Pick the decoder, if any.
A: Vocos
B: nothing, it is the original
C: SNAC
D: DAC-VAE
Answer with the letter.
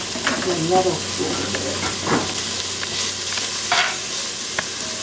B